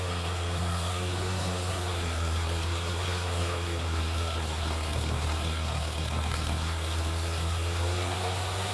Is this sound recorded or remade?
remade